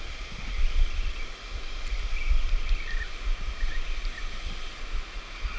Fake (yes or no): no